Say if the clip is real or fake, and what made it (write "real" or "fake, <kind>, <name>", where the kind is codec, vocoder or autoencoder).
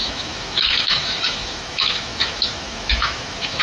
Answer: fake, autoencoder, DAC-VAE